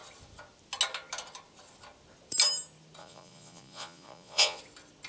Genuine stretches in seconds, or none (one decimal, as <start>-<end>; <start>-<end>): 0.0-3.0; 4.6-5.1